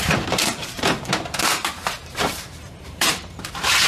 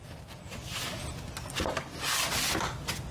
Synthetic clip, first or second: first